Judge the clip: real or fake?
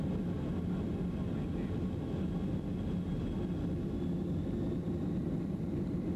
real